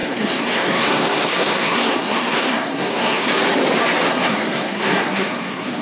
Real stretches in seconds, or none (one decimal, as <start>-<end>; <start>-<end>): 3.3-4.1